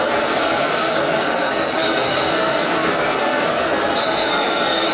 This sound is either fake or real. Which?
fake